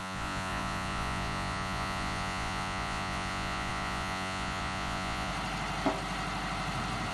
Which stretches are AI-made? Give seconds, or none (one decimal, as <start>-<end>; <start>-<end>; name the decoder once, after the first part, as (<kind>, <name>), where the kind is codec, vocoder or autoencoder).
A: 0.0-5.3 (vocoder, Vocos)